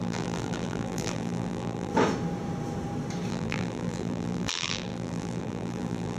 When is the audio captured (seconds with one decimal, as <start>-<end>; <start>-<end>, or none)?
1.9-3.3